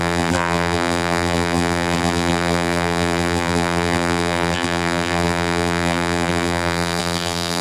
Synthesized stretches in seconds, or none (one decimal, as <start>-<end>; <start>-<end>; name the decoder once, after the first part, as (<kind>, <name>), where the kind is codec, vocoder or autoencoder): 0.0-7.6 (vocoder, BigVGAN v2)